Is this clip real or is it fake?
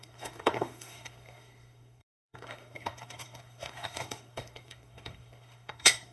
fake